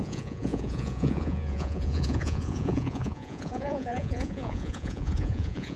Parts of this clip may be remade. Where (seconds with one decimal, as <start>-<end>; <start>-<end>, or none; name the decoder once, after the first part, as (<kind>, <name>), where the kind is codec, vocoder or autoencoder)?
0.0-5.8 (vocoder, Vocos)